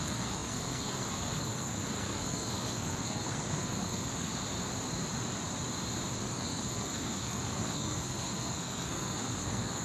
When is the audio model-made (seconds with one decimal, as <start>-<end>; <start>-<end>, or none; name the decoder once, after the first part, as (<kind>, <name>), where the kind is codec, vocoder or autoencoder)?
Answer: 0.0-4.3 (codec, SNAC); 6.2-9.8